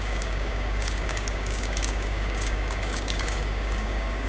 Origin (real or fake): fake